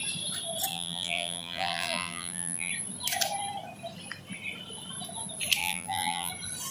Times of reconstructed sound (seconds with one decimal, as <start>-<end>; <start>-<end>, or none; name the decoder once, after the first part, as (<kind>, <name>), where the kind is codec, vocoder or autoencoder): 0.7-2.7 (vocoder, BigVGAN v2); 5.6-6.3